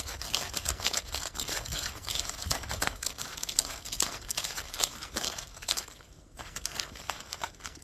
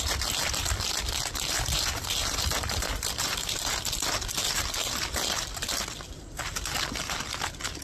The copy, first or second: first